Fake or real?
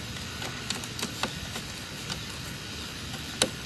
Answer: real